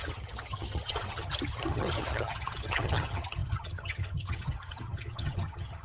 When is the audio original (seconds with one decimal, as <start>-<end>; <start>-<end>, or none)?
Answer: none